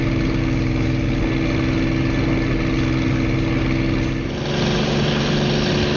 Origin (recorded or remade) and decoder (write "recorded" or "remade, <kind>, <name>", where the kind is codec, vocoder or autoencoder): recorded